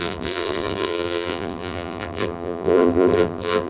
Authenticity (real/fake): fake